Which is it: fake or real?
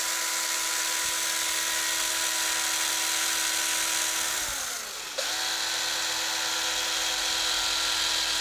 real